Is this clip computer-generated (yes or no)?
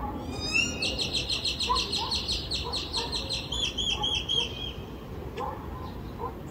no